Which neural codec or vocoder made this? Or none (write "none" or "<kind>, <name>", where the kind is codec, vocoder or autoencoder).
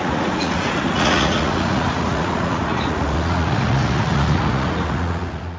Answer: vocoder, Vocos